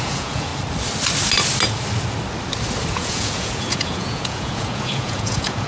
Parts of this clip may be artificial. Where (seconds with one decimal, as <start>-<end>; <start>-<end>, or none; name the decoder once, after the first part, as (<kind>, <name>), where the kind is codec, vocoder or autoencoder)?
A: 0.0-0.5 (vocoder, Vocos); 2.9-5.7